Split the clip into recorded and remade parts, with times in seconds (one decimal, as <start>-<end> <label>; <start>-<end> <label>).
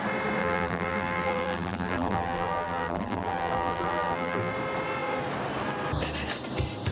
0.0-0.4 recorded; 0.4-4.5 remade; 4.5-6.9 recorded